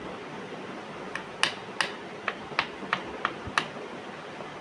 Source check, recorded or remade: recorded